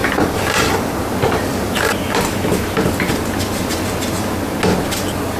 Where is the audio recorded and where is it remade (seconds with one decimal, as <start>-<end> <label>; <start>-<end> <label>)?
0.0-3.2 remade; 3.2-5.4 recorded